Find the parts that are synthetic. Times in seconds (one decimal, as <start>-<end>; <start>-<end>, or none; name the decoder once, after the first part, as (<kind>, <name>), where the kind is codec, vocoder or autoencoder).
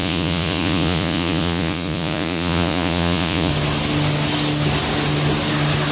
0.0-3.5 (vocoder, Vocos)